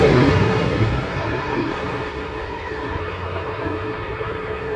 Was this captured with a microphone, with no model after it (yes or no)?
no